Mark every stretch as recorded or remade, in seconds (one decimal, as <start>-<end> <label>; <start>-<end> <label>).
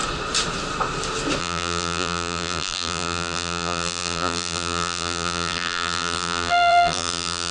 0.0-1.4 recorded; 1.4-7.5 remade